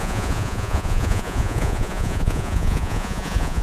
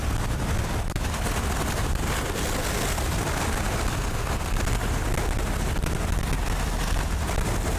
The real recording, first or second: second